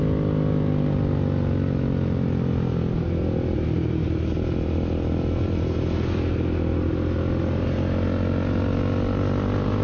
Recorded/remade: recorded